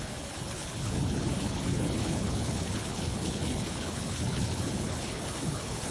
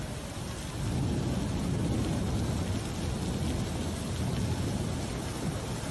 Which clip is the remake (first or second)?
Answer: first